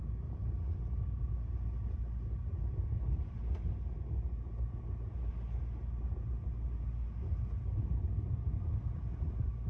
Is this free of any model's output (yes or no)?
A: yes